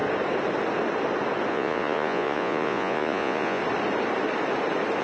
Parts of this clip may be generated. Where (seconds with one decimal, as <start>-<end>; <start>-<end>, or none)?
1.5-3.6